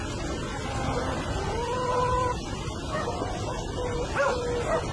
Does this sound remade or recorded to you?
recorded